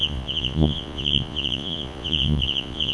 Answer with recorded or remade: remade